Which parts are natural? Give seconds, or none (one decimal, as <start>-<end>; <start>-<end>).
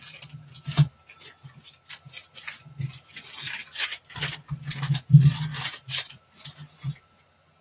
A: 0.0-3.7; 4.7-5.5; 6.2-7.6